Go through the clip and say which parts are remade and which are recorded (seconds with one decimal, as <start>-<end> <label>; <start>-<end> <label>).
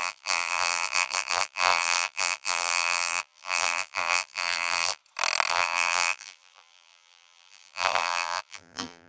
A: 0.0-5.0 remade; 5.0-5.5 recorded; 5.5-9.1 remade